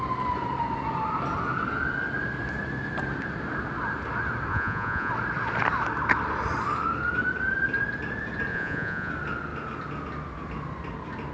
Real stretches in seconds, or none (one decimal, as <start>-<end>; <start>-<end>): 0.0-4.5; 5.1-8.5; 9.1-11.3